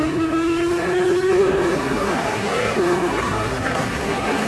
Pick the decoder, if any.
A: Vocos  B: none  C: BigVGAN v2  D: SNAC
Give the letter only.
D